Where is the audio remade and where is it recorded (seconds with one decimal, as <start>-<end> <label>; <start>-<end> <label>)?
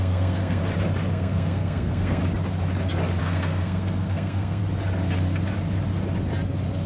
0.0-0.6 remade; 0.6-1.1 recorded; 1.1-2.2 remade; 2.2-3.2 recorded; 3.2-4.6 remade; 4.6-6.9 recorded